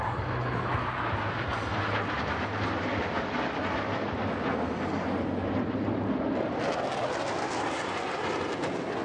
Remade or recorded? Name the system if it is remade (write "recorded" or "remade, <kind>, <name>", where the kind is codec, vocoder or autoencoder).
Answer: recorded